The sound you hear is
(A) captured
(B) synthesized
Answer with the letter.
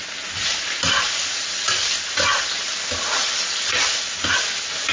A